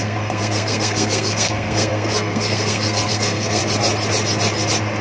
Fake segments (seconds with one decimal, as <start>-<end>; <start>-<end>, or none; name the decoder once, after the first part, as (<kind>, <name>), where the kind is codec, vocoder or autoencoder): 0.0-3.6 (codec, SNAC)